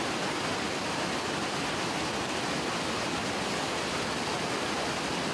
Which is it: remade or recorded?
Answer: recorded